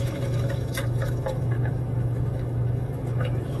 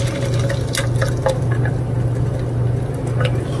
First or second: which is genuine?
second